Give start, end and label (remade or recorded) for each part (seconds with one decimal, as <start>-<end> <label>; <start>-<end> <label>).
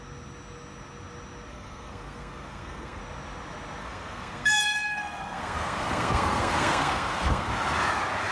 0.0-1.5 recorded; 1.5-3.0 remade; 3.0-3.8 recorded; 3.8-7.5 remade; 7.5-8.3 recorded